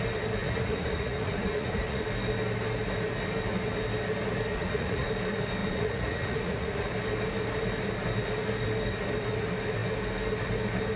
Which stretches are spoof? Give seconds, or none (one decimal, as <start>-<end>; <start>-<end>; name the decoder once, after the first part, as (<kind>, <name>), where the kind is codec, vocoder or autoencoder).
0.4-2.0 (vocoder, Vocos); 4.5-5.1; 5.6-6.9